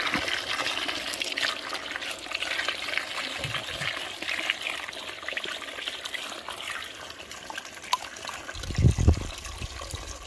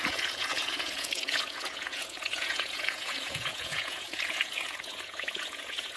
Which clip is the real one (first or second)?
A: first